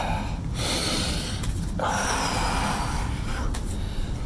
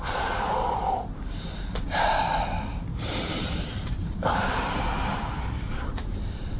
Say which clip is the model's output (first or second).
second